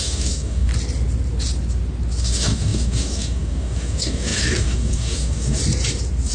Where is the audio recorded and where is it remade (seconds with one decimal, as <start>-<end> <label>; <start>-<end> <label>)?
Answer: 0.0-0.7 remade; 0.7-2.2 recorded; 2.2-5.6 remade; 5.6-6.3 recorded